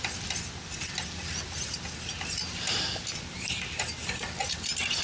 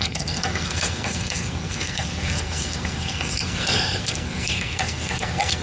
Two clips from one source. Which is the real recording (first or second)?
first